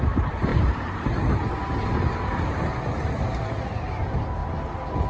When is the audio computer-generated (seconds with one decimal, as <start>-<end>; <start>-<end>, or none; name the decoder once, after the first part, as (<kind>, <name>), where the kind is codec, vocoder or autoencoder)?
0.0-4.4 (vocoder, BigVGAN v2)